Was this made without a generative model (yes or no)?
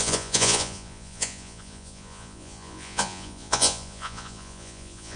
no